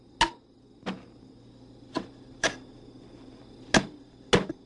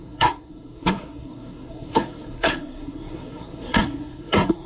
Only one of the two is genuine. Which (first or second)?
first